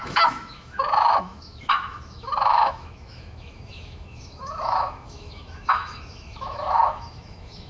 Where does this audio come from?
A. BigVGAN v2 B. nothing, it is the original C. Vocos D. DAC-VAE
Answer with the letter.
D